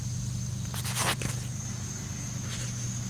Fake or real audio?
real